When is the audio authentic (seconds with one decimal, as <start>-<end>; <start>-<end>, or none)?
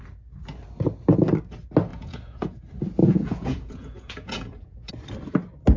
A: 0.0-1.9; 2.6-3.0; 4.9-5.8